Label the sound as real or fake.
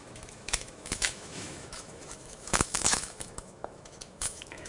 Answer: fake